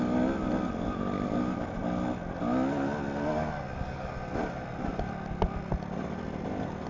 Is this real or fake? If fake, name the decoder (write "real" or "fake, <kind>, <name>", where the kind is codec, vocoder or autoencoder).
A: real